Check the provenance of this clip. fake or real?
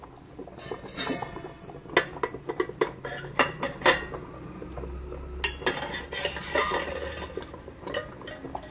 real